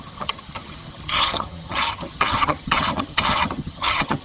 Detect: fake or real fake